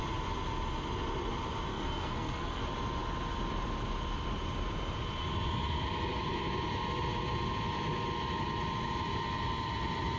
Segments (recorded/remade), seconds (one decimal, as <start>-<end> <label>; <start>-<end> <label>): 0.0-1.7 recorded; 1.7-2.6 remade; 2.6-10.2 recorded